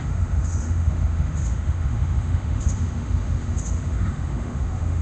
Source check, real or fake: fake